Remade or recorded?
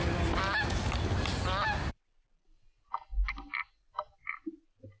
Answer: recorded